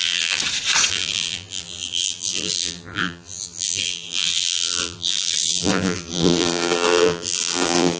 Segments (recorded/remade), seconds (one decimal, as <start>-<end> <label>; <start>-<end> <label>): 0.0-0.4 remade; 0.4-0.9 recorded; 0.9-8.0 remade